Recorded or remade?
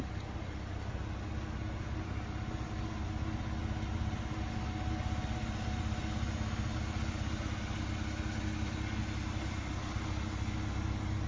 recorded